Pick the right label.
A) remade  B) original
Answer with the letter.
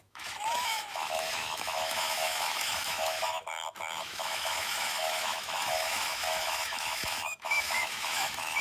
A